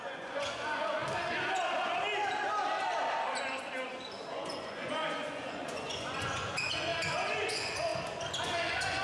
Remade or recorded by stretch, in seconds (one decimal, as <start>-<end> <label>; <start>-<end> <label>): 0.0-1.0 remade; 1.0-4.3 recorded; 4.3-7.9 remade; 7.9-8.4 recorded; 8.4-9.0 remade

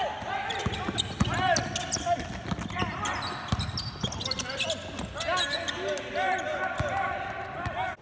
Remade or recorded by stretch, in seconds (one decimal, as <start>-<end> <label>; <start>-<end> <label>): 0.0-8.0 recorded

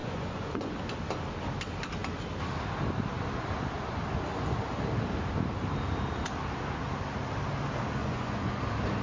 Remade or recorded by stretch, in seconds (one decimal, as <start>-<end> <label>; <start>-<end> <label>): 0.0-0.7 remade; 0.7-8.0 recorded; 8.0-8.6 remade; 8.6-9.0 recorded

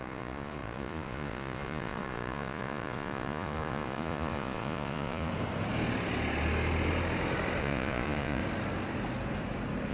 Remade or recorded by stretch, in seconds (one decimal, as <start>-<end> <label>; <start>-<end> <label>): 0.0-5.3 remade; 5.3-7.6 recorded; 7.6-8.4 remade; 8.4-9.9 recorded

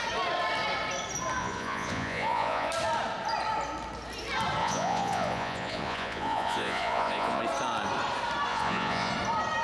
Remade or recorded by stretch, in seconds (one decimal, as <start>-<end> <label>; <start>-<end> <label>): 0.0-1.4 recorded; 1.4-2.7 remade; 2.7-4.6 recorded; 4.6-7.4 remade; 7.4-8.5 recorded; 8.5-9.1 remade; 9.1-9.6 recorded

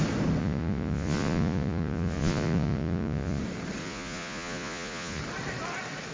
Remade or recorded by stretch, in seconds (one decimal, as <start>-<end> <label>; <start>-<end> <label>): 0.0-0.4 recorded; 0.4-3.4 remade; 3.4-3.8 recorded; 3.8-5.2 remade; 5.2-6.1 recorded

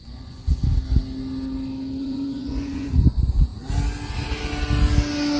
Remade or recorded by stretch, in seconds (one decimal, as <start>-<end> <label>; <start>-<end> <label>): 0.0-0.4 remade; 0.4-2.0 recorded; 2.0-3.5 remade; 3.5-5.4 recorded

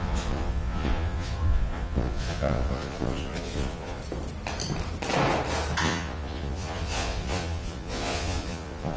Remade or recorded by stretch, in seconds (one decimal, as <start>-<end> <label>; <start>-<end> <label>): 0.0-4.0 remade; 4.0-5.8 recorded; 5.8-9.0 remade